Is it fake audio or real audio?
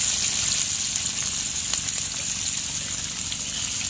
real